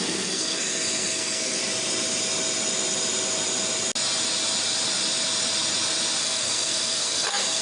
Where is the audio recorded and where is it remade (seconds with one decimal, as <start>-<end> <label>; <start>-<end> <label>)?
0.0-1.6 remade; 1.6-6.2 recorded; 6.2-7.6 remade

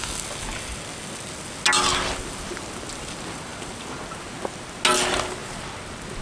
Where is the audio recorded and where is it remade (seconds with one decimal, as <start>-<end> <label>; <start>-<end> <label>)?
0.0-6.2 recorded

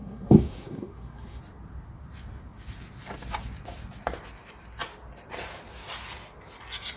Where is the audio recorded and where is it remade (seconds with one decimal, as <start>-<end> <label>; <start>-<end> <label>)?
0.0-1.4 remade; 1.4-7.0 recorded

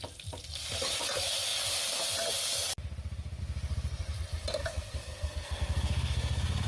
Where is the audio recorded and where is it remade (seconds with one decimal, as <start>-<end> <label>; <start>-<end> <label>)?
0.0-4.6 recorded; 4.6-6.7 remade

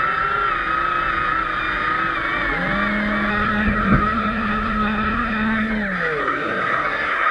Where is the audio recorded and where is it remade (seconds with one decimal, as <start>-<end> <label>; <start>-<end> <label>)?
0.0-3.3 recorded; 3.3-5.7 remade; 5.7-6.2 recorded; 6.2-7.3 remade

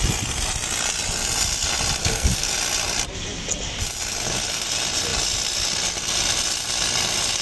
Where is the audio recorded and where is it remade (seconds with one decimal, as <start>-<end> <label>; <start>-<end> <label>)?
0.0-2.0 recorded; 2.0-2.5 remade; 2.5-7.4 recorded